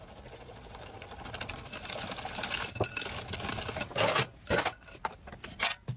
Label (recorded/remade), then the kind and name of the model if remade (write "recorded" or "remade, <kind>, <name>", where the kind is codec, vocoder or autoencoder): recorded